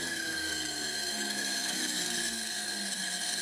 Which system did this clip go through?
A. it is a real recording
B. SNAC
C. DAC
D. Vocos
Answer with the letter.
B